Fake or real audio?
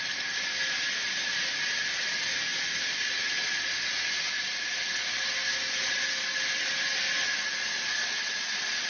real